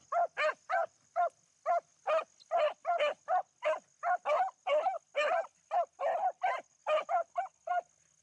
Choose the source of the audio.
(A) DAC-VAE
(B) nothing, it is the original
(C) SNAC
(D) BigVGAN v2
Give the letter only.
B